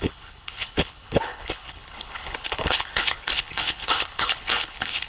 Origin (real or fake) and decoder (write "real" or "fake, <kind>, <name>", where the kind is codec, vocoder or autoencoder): fake, codec, HILCodec